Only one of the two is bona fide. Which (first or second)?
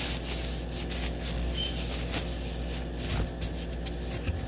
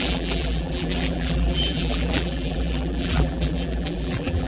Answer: first